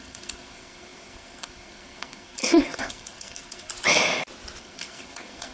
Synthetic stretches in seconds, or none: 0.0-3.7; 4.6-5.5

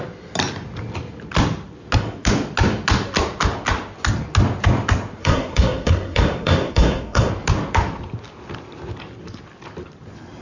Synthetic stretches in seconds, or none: 5.2-7.3

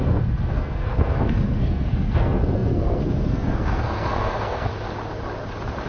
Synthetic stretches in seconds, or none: 0.0-4.7

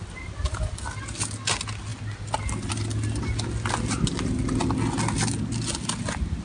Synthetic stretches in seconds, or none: none

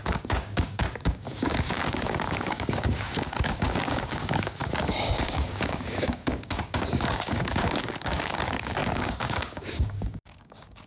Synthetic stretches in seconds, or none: 0.0-10.9

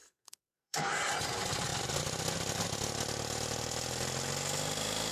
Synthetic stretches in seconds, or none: 0.0-0.9

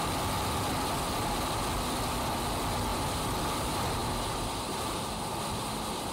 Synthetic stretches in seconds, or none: 2.9-3.4; 4.0-6.1

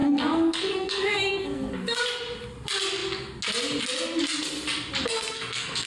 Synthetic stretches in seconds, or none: 0.0-2.0; 5.0-5.9